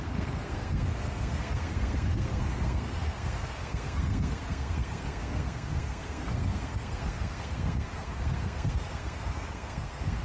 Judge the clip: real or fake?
fake